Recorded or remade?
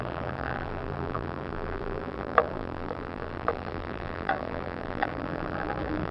remade